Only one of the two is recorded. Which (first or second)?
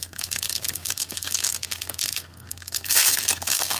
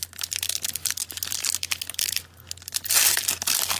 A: second